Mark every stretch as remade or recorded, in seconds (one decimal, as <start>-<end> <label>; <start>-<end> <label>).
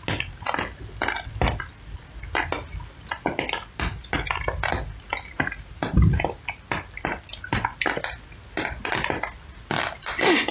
0.0-10.5 recorded